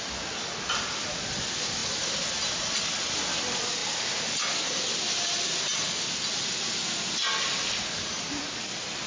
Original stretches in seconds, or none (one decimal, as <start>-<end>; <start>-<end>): 0.0-9.1